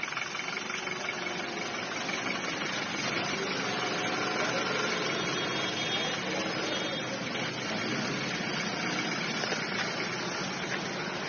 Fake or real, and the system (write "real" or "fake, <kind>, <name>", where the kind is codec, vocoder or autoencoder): real